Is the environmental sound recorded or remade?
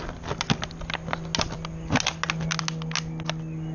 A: recorded